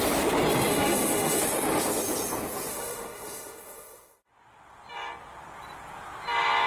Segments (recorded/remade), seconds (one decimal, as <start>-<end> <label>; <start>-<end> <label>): 0.0-0.7 recorded; 0.7-1.4 remade; 1.4-2.7 recorded; 2.7-4.3 remade; 4.3-6.7 recorded